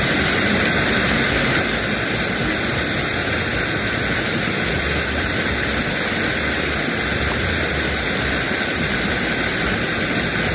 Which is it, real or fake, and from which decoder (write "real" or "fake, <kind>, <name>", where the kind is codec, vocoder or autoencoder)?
real